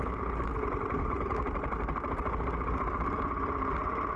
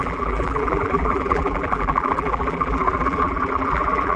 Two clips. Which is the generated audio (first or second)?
second